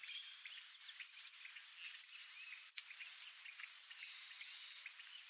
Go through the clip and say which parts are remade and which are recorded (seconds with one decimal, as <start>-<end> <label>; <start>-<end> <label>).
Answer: 0.0-5.3 recorded